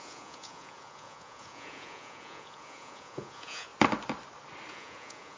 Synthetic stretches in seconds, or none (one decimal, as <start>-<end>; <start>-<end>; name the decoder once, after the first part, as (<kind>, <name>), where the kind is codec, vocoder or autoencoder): 0.0-3.7 (vocoder, Vocos); 4.7-5.4